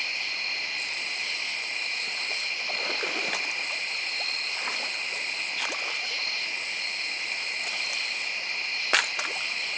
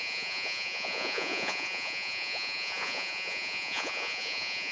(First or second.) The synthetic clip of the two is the second